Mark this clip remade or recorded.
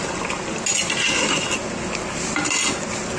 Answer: recorded